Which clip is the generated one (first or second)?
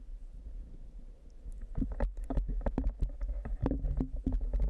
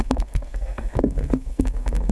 second